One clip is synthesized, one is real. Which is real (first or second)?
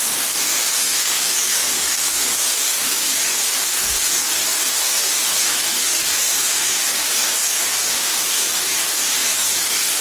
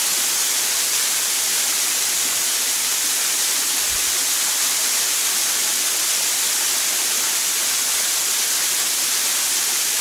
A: second